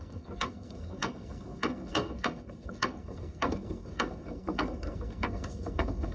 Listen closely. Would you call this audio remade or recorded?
remade